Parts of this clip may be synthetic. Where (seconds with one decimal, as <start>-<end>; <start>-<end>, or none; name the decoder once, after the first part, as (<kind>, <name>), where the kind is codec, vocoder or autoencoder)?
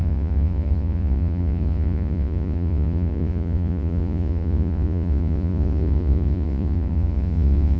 0.0-7.8 (vocoder, Vocos)